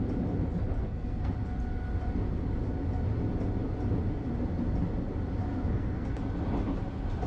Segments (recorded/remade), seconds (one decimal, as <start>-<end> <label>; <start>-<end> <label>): 0.0-0.8 recorded; 0.8-1.3 remade; 1.3-5.5 recorded; 5.5-6.1 remade; 6.1-7.3 recorded